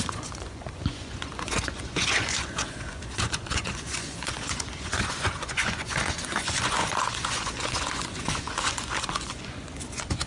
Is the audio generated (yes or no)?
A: yes